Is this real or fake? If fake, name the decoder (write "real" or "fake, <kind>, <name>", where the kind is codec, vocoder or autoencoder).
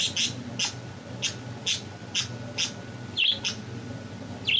real